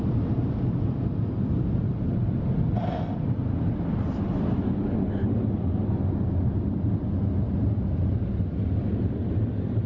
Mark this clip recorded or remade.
recorded